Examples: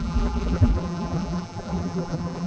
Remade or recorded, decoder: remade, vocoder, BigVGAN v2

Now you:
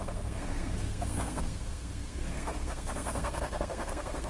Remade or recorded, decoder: remade, codec, SNAC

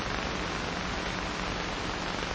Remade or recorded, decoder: recorded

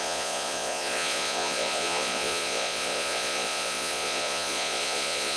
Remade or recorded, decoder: remade, vocoder, Vocos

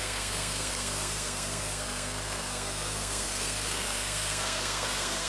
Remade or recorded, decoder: remade, codec, SNAC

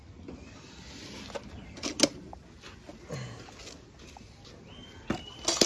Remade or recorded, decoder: recorded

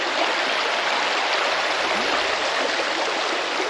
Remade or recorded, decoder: recorded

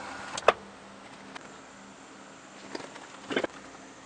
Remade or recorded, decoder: recorded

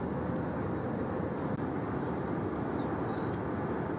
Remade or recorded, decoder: recorded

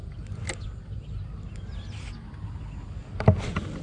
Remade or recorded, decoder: recorded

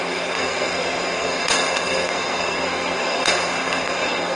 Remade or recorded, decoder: remade, codec, SNAC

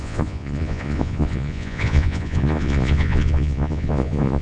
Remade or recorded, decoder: remade, vocoder, Vocos